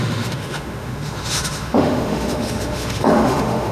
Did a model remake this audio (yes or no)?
yes